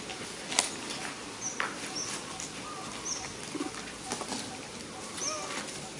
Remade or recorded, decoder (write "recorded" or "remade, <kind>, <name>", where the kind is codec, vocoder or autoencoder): recorded